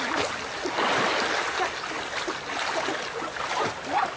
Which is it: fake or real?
real